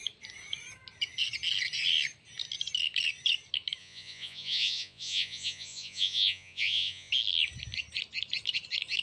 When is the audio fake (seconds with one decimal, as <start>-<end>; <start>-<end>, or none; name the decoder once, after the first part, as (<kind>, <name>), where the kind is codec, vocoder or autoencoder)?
3.8-7.1 (vocoder, Vocos)